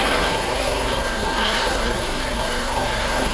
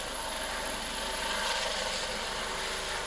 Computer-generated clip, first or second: first